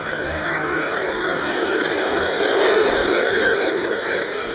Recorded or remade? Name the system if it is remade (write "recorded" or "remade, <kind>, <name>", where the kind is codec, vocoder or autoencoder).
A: remade, codec, DAC